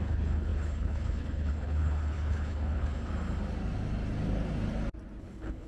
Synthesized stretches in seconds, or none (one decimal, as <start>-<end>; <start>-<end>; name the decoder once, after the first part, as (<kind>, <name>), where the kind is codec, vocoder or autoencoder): 0.0-3.1 (codec, HILCodec); 5.2-5.7